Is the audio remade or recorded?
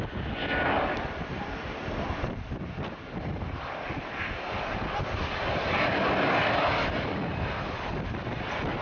recorded